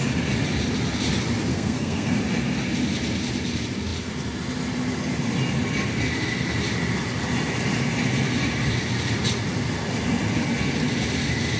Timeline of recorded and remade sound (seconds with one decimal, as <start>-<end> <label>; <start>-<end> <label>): 0.0-1.5 recorded; 1.5-2.2 remade; 2.2-11.6 recorded